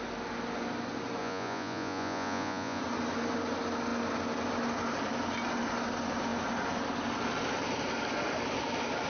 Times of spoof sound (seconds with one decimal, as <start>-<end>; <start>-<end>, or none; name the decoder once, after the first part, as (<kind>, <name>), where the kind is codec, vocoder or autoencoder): 1.2-2.8 (vocoder, Vocos)